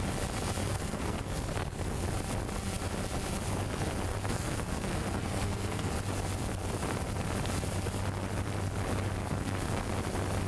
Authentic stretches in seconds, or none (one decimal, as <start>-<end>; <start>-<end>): 0.0-0.6; 2.0-4.1; 5.9-9.2; 9.9-10.5